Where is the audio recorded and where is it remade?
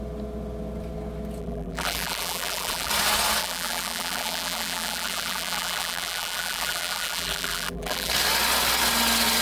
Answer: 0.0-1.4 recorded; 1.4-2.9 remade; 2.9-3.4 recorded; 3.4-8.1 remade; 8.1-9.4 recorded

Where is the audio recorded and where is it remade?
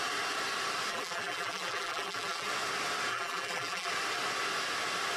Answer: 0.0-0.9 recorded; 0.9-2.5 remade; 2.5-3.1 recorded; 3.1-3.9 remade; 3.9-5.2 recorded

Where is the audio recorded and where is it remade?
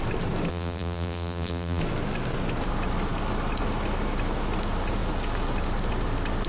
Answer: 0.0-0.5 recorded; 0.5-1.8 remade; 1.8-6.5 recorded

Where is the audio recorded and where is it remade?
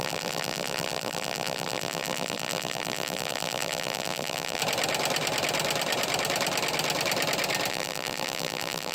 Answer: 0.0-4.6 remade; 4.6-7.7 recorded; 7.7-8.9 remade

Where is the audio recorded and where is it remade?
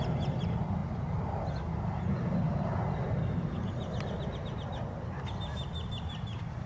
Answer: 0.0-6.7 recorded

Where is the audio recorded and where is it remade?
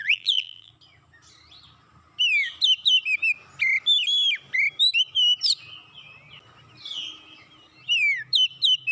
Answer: 0.0-0.7 remade; 0.7-8.9 recorded